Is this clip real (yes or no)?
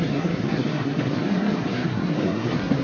no